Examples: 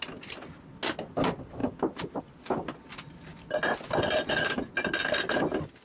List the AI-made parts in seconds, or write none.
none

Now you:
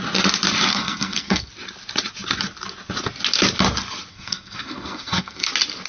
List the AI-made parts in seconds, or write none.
0.7-1.5 (codec, SNAC); 4.1-5.5

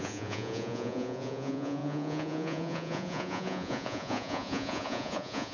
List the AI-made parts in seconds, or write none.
0.0-5.5 (vocoder, Vocos)

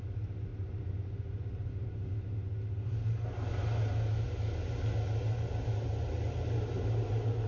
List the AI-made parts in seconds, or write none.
0.5-2.1 (vocoder, BigVGAN v2)

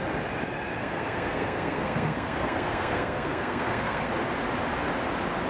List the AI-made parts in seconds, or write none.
0.8-4.1 (codec, SNAC)

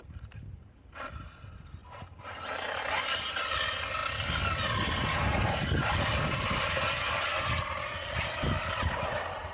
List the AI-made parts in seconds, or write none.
none

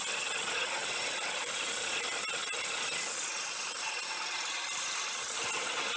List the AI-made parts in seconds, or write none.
0.0-2.4 (vocoder, BigVGAN v2); 4.8-6.0

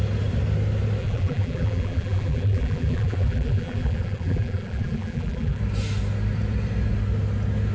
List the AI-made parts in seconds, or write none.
1.0-5.6 (vocoder, BigVGAN v2)